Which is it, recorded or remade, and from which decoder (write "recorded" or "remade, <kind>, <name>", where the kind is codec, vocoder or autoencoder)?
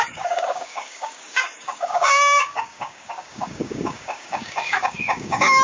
remade, codec, DAC